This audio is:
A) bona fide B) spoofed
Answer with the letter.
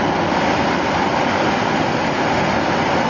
A